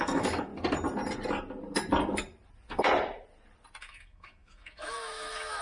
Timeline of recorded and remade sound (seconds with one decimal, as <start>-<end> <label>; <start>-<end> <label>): 0.0-0.5 remade; 0.5-3.8 recorded; 3.8-5.6 remade

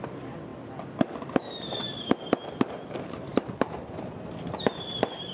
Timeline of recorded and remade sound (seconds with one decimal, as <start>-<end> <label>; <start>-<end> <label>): 0.0-5.3 recorded

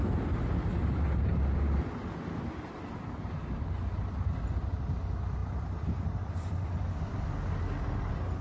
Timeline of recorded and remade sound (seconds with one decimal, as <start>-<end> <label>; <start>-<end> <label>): 0.0-5.4 recorded; 5.4-7.0 remade; 7.0-8.4 recorded

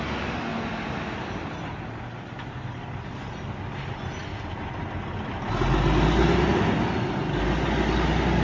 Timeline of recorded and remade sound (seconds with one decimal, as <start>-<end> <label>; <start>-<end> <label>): 0.0-8.4 recorded

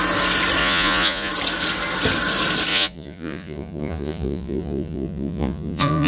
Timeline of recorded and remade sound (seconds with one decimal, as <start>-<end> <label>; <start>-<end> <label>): 0.0-0.6 recorded; 0.6-1.3 remade; 1.3-2.7 recorded; 2.7-6.1 remade

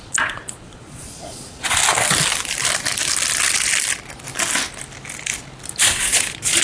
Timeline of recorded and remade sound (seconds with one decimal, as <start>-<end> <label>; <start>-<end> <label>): 0.0-1.8 remade; 1.8-5.8 recorded; 5.8-6.6 remade